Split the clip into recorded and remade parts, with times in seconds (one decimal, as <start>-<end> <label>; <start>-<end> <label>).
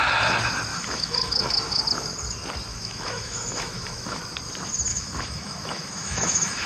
0.0-0.7 recorded; 0.7-1.8 remade; 1.8-2.7 recorded; 2.7-4.2 remade; 4.2-4.9 recorded; 4.9-6.7 remade